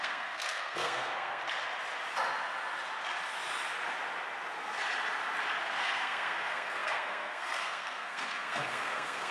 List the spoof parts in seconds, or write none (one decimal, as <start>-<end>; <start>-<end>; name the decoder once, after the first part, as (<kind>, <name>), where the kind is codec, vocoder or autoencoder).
0.0-1.4 (codec, SNAC); 5.6-9.3